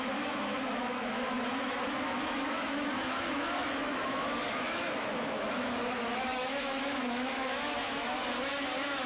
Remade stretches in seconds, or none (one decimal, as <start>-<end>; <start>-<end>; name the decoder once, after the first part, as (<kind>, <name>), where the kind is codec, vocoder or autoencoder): 0.0-9.1 (autoencoder, DAC-VAE)